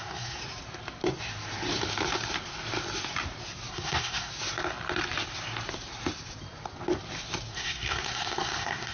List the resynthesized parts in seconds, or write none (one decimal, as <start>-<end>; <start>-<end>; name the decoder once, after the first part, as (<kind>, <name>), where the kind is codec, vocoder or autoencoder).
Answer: 0.0-0.4 (codec, SNAC); 3.7-4.3; 7.5-8.9